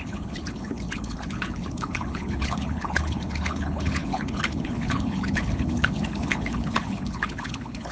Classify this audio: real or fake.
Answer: fake